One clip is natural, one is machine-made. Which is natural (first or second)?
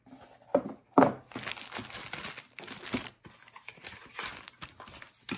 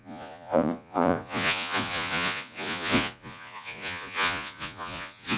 first